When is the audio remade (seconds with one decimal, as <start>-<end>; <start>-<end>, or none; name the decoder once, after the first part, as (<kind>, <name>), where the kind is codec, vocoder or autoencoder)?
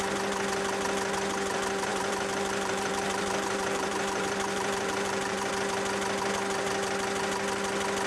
1.9-5.5 (vocoder, BigVGAN v2)